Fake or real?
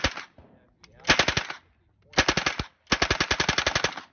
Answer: real